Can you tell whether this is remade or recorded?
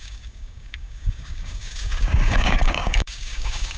remade